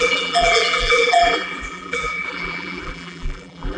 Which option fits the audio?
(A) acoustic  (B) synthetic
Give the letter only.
B